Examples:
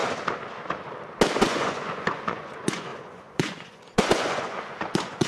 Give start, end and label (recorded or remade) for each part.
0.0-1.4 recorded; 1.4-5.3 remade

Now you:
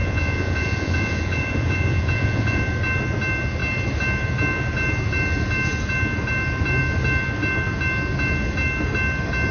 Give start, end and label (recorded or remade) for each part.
0.0-2.6 remade; 2.6-9.5 recorded

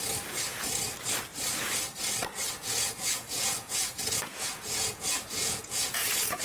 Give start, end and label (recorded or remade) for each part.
0.0-2.6 recorded; 2.6-6.4 remade

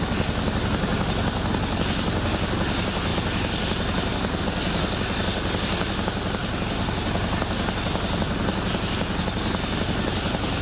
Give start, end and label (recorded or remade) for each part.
0.0-10.6 recorded